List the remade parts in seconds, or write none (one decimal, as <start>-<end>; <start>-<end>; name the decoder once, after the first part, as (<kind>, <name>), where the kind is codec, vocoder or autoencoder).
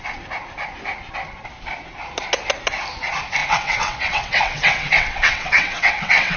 3.4-6.4 (vocoder, WaveNeXt)